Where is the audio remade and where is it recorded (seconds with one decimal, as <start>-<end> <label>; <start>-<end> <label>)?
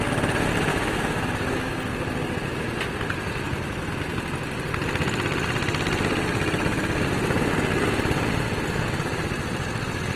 0.0-0.7 recorded; 0.7-1.7 remade; 1.7-10.2 recorded